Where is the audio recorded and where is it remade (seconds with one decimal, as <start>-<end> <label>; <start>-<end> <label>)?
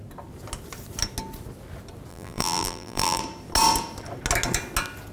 0.0-2.1 recorded; 2.1-3.2 remade; 3.2-5.1 recorded